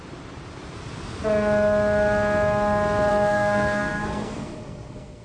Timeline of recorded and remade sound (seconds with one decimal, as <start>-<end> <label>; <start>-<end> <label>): 0.0-3.1 recorded; 3.1-5.2 remade